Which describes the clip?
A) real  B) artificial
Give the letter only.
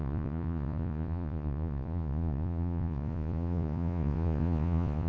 B